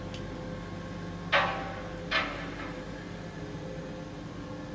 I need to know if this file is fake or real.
real